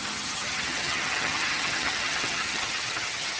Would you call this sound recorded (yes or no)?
no